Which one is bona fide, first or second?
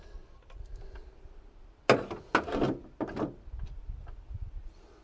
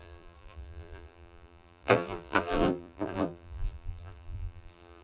first